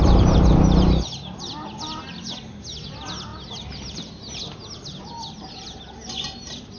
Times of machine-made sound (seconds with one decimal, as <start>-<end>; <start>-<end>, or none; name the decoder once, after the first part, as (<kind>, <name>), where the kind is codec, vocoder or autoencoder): none